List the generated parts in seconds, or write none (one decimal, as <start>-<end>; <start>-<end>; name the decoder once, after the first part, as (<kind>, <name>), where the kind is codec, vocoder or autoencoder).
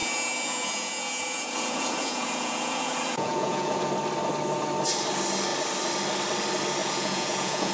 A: 0.0-3.9 (vocoder, Vocos); 6.8-7.7